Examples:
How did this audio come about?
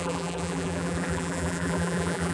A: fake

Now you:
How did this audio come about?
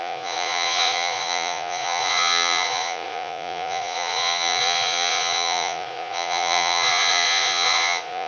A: fake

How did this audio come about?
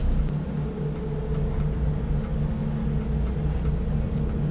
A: real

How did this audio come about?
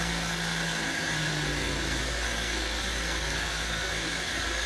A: fake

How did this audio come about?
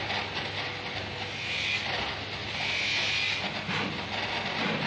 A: real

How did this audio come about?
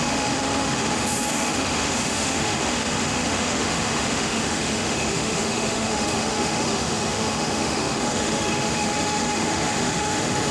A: fake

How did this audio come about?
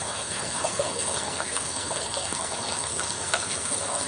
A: fake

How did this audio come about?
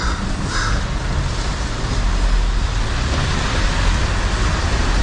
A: real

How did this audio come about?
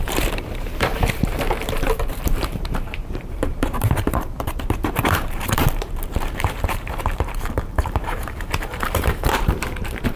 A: fake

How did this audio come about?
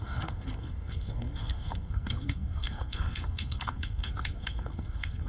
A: fake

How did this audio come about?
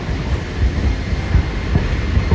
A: real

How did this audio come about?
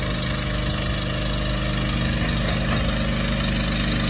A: real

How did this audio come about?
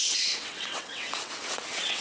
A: fake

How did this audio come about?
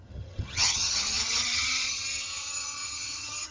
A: fake